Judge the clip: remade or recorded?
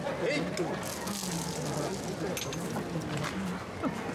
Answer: recorded